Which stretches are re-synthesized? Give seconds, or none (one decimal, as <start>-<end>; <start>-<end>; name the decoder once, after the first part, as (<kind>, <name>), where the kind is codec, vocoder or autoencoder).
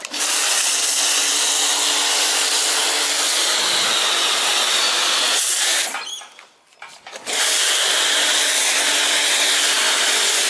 none